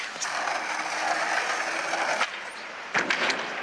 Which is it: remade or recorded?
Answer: recorded